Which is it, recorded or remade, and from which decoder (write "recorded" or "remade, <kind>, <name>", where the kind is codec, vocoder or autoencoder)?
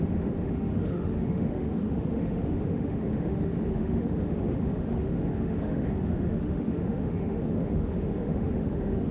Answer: remade, autoencoder, DAC-VAE